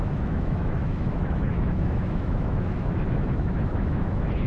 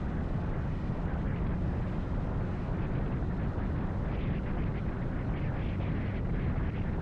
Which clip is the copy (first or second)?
first